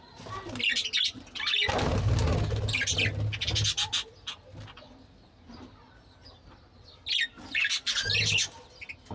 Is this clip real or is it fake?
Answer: real